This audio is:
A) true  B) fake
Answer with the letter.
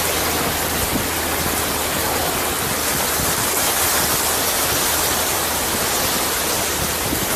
A